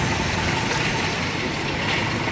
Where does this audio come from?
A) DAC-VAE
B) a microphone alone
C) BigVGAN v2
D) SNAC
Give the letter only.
B